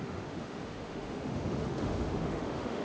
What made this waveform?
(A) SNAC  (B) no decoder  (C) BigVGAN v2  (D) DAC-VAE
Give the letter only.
D